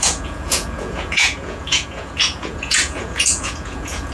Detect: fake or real fake